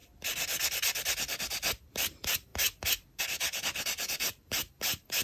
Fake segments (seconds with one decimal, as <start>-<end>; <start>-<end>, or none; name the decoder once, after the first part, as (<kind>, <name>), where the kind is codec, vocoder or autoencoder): 1.9-2.5 (vocoder, BigVGAN v2); 3.2-5.2